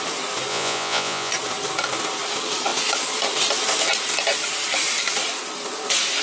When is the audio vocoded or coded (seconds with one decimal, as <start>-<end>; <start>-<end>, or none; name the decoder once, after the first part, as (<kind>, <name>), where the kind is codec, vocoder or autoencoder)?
0.5-1.3 (vocoder, Vocos)